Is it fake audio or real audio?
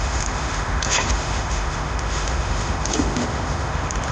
fake